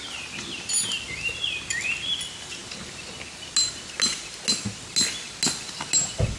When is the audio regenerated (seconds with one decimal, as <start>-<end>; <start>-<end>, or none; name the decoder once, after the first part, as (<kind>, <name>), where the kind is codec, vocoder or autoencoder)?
none